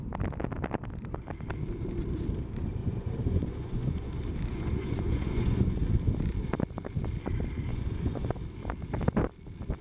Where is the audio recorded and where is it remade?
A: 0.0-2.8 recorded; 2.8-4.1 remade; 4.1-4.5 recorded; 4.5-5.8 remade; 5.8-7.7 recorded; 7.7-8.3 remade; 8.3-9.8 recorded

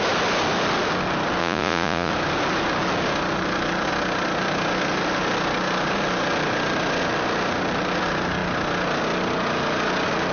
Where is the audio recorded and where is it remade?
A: 0.0-1.4 recorded; 1.4-2.1 remade; 2.1-10.3 recorded

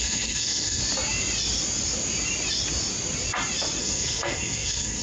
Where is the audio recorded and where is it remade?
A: 0.0-0.8 remade; 0.8-3.8 recorded; 3.8-5.0 remade

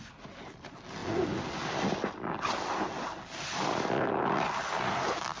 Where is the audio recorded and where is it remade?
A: 0.0-5.4 recorded

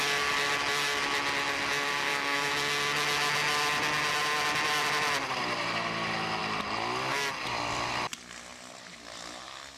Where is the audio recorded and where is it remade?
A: 0.0-1.9 recorded; 1.9-2.5 remade; 2.5-9.8 recorded

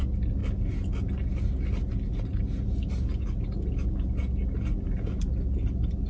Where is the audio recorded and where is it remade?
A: 0.0-6.1 recorded

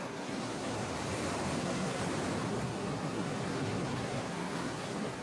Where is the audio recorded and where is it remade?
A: 0.0-0.9 remade; 0.9-1.6 recorded; 1.6-2.0 remade; 2.0-2.5 recorded; 2.5-5.2 remade